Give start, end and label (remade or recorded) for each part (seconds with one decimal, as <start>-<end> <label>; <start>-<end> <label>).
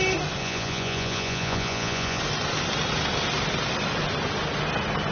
0.0-0.4 recorded; 0.4-2.2 remade; 2.2-5.1 recorded